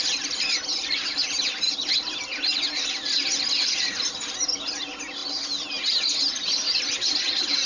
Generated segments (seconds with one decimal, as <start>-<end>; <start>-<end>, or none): none